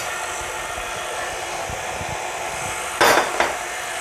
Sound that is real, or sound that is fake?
real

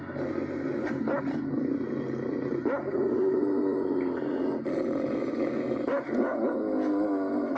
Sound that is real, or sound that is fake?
real